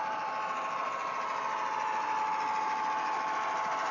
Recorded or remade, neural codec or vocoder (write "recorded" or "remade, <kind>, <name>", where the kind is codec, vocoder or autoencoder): recorded